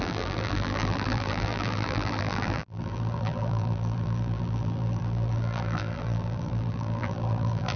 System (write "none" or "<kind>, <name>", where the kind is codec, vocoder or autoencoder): vocoder, BigVGAN v2